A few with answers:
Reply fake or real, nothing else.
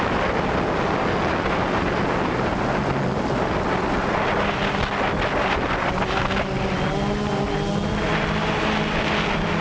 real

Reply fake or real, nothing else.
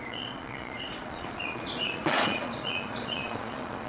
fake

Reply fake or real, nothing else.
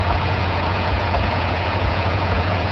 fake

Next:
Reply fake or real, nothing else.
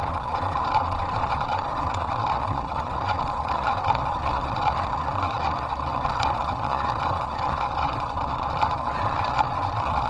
fake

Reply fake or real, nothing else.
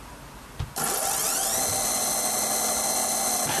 real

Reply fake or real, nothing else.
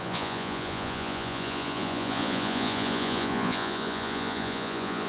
fake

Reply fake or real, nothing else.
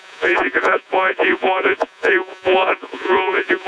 fake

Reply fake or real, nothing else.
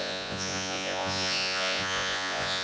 fake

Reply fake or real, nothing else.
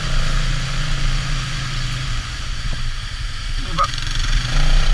fake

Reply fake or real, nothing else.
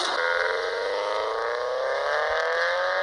real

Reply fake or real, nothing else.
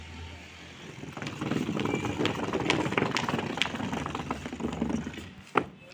real